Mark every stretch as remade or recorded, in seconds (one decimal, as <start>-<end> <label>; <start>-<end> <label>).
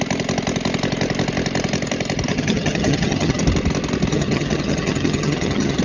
0.0-2.3 recorded; 2.3-3.4 remade; 3.4-4.1 recorded; 4.1-5.8 remade